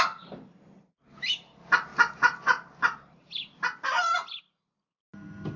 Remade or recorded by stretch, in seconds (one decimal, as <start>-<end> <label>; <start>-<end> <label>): 0.0-5.6 recorded